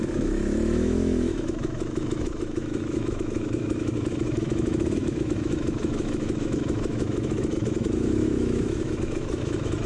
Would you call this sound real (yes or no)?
no